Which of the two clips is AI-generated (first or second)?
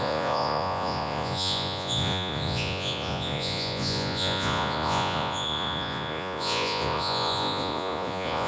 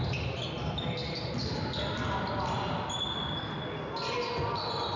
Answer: first